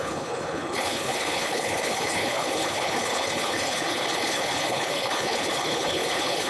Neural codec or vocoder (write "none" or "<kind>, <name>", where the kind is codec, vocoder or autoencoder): codec, HILCodec